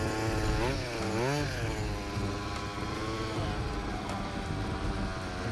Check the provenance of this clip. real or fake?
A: real